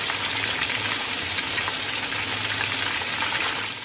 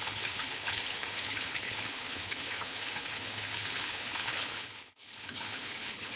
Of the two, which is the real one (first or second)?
first